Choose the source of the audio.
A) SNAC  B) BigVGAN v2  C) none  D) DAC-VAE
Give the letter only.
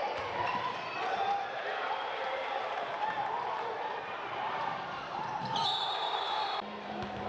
B